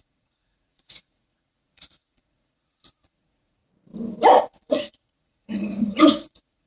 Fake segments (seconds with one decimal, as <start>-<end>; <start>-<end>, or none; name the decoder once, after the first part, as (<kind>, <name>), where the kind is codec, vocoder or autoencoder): 0.0-3.6 (vocoder, Vocos); 4.4-6.7